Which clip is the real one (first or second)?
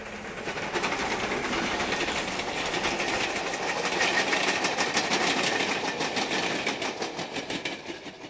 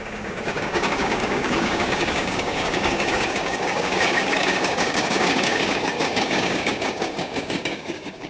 first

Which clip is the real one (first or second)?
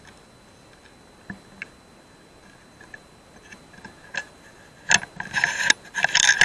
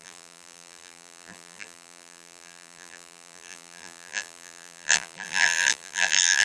first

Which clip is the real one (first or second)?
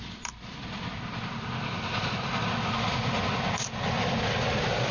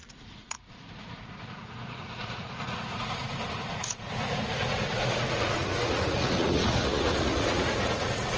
first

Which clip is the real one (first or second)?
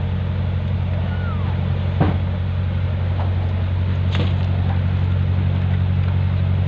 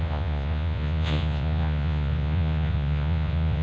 first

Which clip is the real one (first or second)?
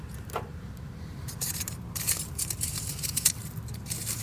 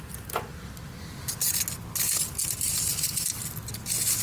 second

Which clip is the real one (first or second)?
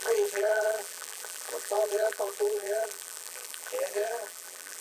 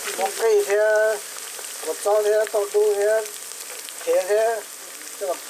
second